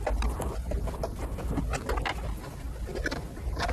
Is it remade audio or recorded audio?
recorded